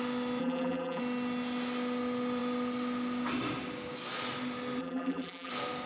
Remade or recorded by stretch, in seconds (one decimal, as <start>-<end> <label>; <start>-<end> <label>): 0.0-0.4 recorded; 0.4-1.0 remade; 1.0-4.8 recorded; 4.8-5.5 remade; 5.5-5.9 recorded